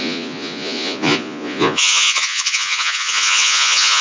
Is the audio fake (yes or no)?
yes